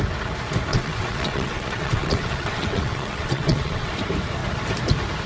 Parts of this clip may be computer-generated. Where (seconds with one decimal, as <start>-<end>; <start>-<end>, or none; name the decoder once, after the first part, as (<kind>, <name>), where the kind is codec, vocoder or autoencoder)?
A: 0.7-3.9 (vocoder, WaveNeXt)